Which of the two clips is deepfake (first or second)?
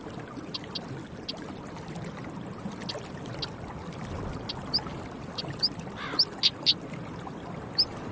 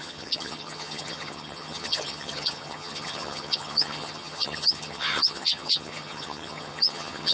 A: second